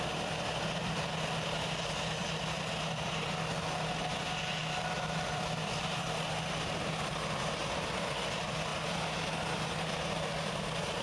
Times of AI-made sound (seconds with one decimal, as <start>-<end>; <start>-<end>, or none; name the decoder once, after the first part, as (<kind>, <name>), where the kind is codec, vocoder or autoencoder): 4.6-5.4 (vocoder, BigVGAN v2)